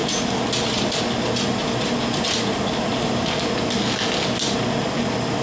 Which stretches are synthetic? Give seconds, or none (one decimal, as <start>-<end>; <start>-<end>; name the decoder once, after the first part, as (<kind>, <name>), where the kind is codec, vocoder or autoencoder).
none